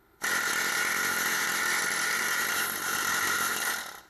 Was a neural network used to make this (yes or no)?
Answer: no